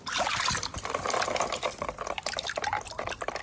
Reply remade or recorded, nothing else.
recorded